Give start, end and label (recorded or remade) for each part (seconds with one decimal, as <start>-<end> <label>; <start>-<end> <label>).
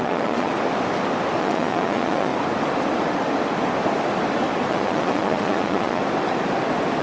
0.0-0.5 remade; 0.5-1.4 recorded; 1.4-2.3 remade; 2.3-4.7 recorded; 4.7-6.0 remade; 6.0-7.0 recorded